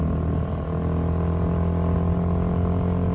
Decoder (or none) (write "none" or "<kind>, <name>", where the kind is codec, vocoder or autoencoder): none